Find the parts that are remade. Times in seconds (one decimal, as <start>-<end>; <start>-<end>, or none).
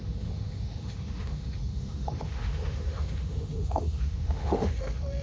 0.0-5.2